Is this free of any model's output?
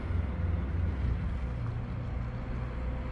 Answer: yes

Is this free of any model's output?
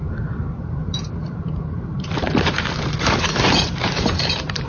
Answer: no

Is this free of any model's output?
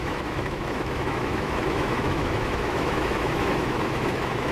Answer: no